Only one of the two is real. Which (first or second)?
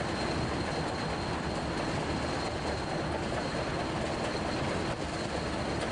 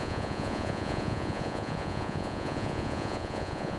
first